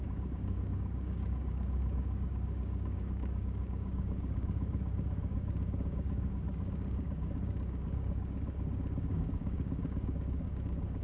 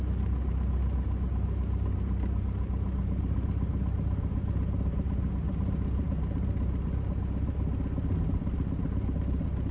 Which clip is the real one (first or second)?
second